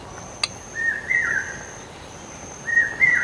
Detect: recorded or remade recorded